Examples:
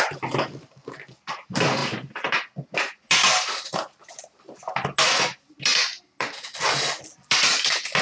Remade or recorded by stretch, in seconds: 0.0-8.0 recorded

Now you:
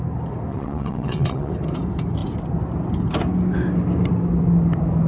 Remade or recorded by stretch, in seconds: 0.0-0.5 recorded; 0.5-1.5 remade; 1.5-5.1 recorded

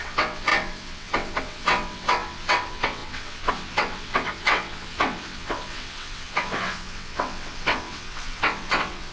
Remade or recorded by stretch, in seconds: 0.0-9.1 remade

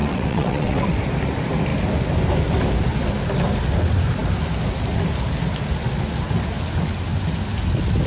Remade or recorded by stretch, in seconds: 0.0-0.9 remade; 0.9-8.1 recorded

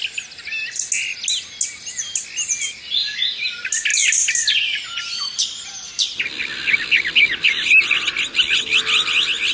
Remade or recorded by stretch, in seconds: 0.0-9.5 recorded

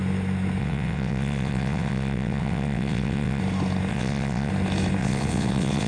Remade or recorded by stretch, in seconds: 0.0-0.6 recorded; 0.6-3.4 remade; 3.4-3.9 recorded; 3.9-4.5 remade; 4.5-5.0 recorded; 5.0-5.9 remade

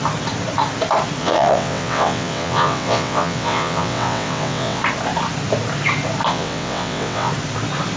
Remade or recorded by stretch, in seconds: 0.0-1.2 recorded; 1.2-4.8 remade; 4.8-6.3 recorded; 6.3-7.3 remade; 7.3-8.0 recorded

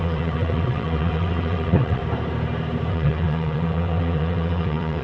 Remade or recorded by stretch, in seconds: 0.0-2.0 remade; 2.0-2.9 recorded; 2.9-5.0 remade